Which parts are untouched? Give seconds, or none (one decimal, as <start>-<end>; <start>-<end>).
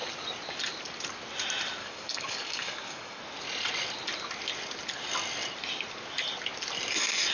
0.0-1.8; 3.2-7.3